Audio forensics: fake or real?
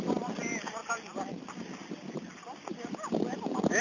real